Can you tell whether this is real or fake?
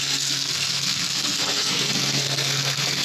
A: fake